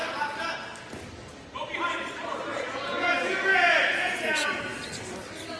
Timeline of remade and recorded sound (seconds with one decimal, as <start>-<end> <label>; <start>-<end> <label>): 0.0-2.5 recorded; 2.5-3.1 remade; 3.1-3.9 recorded; 3.9-4.6 remade; 4.6-5.6 recorded